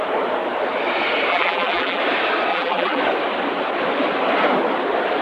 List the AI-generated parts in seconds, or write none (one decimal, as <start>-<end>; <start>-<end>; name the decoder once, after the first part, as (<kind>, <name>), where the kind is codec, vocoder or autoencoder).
1.3-2.0 (vocoder, BigVGAN v2); 2.5-3.0

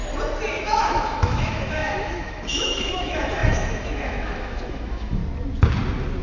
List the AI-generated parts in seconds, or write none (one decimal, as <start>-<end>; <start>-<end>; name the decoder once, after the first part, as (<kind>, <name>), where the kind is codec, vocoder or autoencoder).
0.6-5.2 (autoencoder, DAC-VAE)

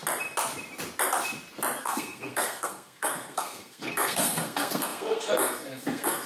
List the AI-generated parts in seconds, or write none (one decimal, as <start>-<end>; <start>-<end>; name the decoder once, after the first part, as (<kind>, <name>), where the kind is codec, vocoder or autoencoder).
1.8-6.3 (codec, SNAC)

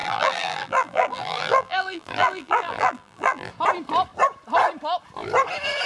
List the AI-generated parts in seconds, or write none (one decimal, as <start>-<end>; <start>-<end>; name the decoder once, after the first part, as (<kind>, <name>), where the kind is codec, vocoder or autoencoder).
0.0-3.5 (vocoder, BigVGAN v2)

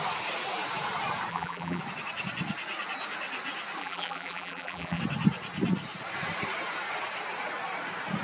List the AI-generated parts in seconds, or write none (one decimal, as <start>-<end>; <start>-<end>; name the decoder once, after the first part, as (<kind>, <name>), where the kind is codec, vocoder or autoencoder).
1.3-1.8 (vocoder, BigVGAN v2); 3.8-5.0

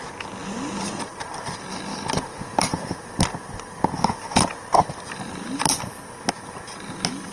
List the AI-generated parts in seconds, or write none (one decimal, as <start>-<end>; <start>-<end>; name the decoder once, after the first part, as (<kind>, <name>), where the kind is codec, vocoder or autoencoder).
0.4-1.0 (vocoder, BigVGAN v2); 1.9-6.3

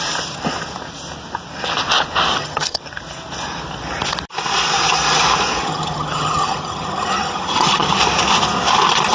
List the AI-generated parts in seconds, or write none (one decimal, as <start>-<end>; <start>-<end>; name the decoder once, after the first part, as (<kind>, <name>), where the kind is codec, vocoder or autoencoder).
2.3-2.8 (vocoder, HiFi-GAN); 5.6-8.0

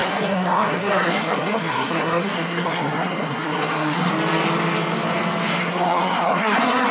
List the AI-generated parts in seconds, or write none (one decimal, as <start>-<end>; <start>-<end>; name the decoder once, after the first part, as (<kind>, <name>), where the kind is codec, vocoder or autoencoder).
0.0-4.1 (codec, SNAC); 5.6-6.9